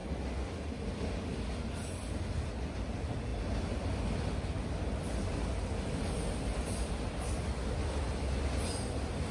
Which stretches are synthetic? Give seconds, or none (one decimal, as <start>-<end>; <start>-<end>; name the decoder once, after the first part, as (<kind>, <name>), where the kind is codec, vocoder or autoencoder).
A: none